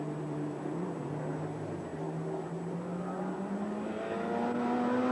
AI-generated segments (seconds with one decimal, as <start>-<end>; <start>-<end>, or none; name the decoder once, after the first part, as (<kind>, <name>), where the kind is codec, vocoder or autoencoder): none